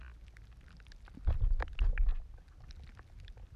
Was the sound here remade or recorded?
recorded